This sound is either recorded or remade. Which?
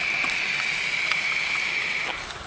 recorded